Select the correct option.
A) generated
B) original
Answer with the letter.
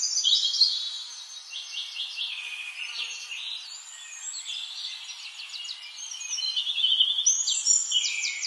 B